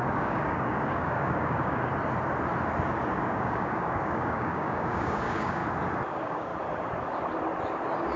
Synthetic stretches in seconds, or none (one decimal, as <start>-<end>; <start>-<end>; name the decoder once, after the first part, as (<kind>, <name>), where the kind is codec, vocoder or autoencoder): 0.0-1.9 (codec, DAC); 3.1-5.6; 6.1-6.5